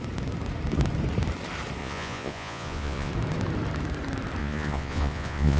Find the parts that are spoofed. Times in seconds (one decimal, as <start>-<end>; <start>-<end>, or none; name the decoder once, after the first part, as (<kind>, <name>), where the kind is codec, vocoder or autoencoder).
1.8-3.1 (vocoder, Vocos); 4.4-5.6